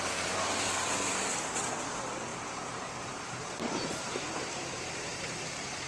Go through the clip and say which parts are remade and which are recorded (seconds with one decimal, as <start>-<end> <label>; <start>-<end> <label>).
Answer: 0.0-2.3 recorded; 2.3-5.9 remade

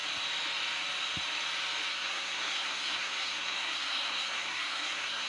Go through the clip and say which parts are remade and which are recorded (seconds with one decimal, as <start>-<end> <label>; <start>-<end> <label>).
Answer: 0.0-1.9 recorded; 1.9-5.3 remade

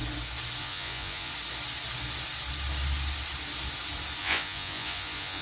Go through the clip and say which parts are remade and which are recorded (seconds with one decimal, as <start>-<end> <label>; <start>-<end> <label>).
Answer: 0.0-0.6 recorded; 0.6-1.3 remade; 1.3-4.2 recorded; 4.2-5.4 remade

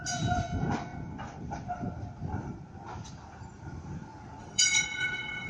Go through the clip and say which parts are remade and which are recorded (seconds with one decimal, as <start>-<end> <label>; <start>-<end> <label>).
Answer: 0.0-4.4 recorded; 4.4-5.5 remade

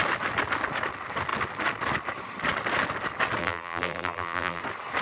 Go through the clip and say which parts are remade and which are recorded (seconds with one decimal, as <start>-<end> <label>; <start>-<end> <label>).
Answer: 0.0-3.4 recorded; 3.4-4.6 remade; 4.6-5.0 recorded

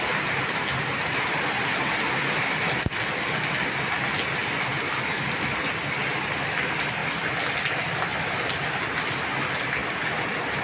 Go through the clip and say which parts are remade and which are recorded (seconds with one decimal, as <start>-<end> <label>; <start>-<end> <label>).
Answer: 0.0-10.6 recorded

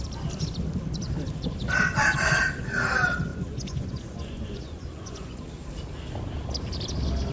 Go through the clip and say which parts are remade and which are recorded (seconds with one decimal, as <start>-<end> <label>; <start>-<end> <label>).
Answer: 0.0-3.3 recorded; 3.3-5.4 remade; 5.4-7.3 recorded